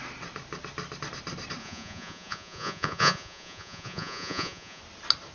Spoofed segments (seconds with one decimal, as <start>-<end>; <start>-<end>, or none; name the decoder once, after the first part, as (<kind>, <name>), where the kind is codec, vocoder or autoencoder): 1.6-4.8 (vocoder, Vocos)